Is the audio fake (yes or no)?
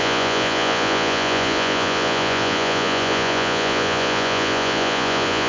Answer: yes